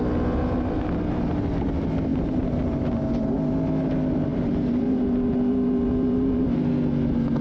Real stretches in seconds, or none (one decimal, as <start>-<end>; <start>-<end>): 0.0-2.1; 3.0-4.3; 6.7-7.4